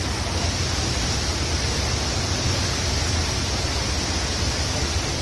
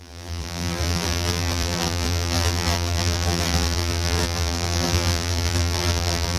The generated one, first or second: second